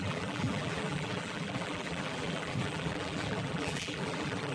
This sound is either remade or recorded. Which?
remade